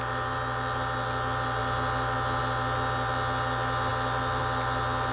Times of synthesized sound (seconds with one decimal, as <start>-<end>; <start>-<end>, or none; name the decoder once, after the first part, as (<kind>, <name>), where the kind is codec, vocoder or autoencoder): none